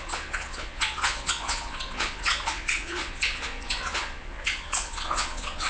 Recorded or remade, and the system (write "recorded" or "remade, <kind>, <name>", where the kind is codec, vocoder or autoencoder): remade, vocoder, Vocos